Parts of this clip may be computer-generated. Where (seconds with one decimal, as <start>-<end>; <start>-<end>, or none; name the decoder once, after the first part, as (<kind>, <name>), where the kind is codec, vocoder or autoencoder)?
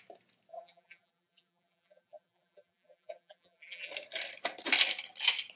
0.5-3.9 (vocoder, BigVGAN v2)